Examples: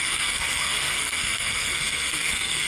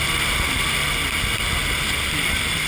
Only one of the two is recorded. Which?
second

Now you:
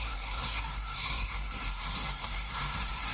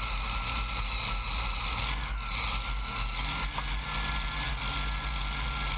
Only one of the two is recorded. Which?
second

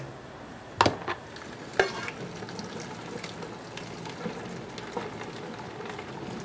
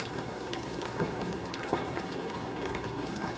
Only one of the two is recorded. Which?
first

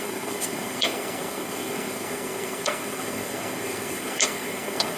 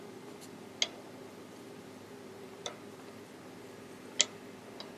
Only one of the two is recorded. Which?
second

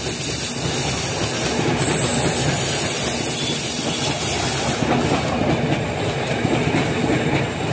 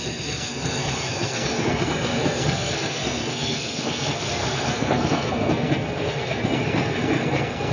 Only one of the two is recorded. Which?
first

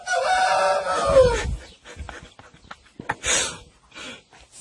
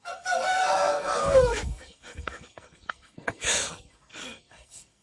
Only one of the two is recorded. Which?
first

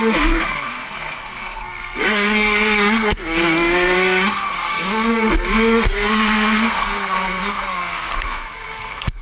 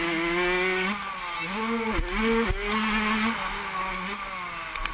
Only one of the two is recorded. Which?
second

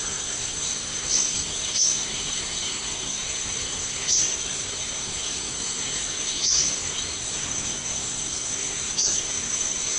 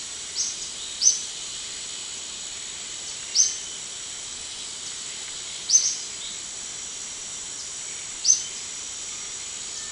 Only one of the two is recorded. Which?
second